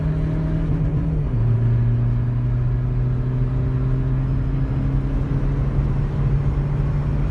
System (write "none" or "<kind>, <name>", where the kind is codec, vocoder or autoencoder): none